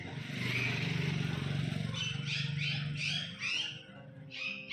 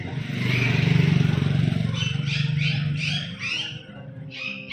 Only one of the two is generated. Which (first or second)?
second